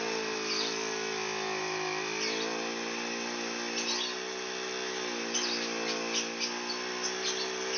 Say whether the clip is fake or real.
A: real